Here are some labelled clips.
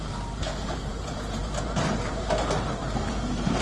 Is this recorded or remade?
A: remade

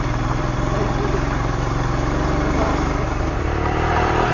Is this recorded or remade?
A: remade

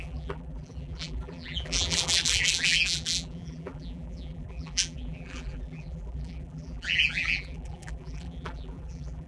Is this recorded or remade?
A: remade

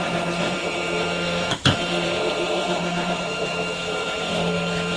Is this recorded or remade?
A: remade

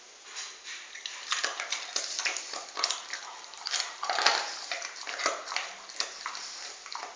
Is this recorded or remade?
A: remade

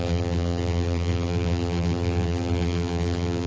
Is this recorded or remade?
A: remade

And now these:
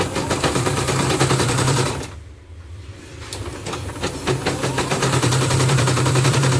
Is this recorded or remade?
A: remade